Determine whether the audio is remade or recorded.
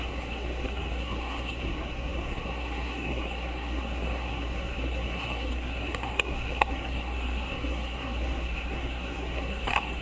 remade